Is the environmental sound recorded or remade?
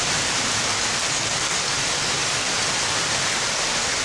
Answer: remade